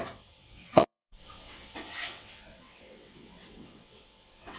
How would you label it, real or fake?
fake